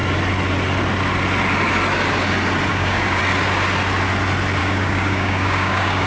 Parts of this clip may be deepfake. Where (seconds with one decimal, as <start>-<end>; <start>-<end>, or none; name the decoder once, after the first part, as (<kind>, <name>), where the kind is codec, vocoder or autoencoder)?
2.7-3.2 (codec, DAC); 4.6-6.1